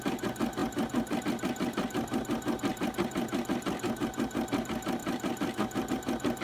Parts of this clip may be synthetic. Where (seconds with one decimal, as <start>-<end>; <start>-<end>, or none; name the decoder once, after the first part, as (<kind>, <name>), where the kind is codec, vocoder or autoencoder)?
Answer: 0.6-1.2 (vocoder, BigVGAN v2); 2.7-3.4